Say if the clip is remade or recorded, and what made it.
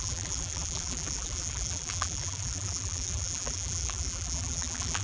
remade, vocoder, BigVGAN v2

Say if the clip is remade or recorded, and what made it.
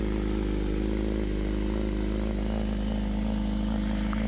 recorded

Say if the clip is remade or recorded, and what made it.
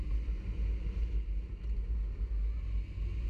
recorded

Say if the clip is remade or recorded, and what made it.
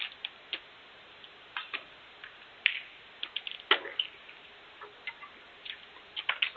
recorded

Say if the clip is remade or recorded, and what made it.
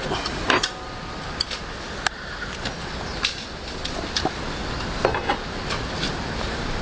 remade, vocoder, BigVGAN v2